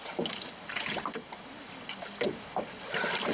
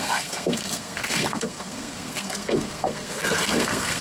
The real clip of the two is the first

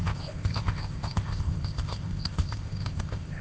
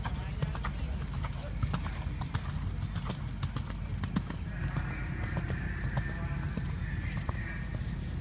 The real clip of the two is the second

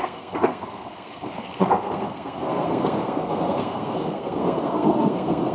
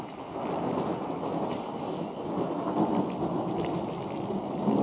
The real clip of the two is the second